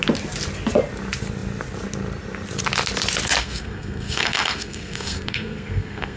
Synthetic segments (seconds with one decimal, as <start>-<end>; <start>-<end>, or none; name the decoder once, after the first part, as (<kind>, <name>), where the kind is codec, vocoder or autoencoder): 3.4-6.2 (codec, SNAC)